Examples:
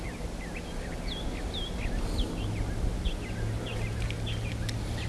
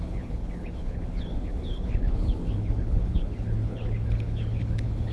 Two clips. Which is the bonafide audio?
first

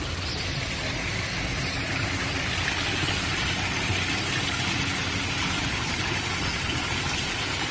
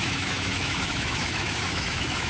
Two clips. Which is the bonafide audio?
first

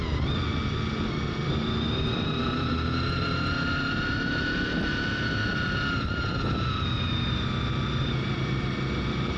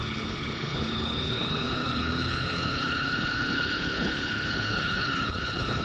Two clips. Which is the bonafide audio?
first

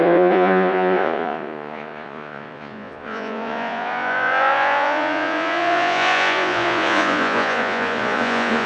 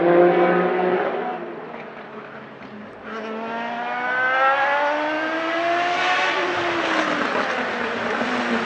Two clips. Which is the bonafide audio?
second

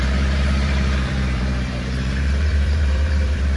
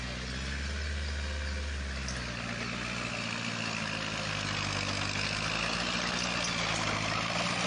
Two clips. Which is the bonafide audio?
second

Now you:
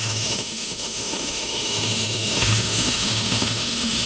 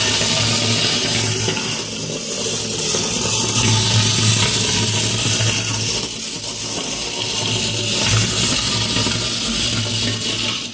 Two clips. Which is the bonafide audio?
second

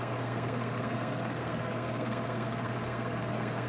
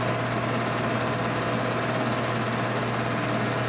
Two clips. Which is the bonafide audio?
second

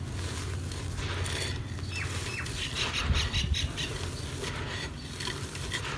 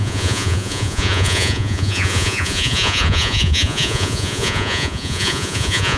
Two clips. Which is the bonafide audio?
first